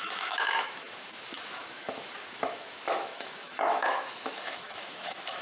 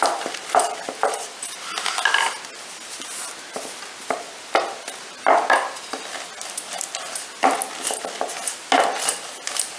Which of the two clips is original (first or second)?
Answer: second